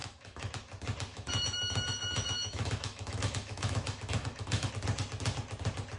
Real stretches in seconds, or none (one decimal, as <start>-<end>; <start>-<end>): 0.5-1.1; 4.7-6.0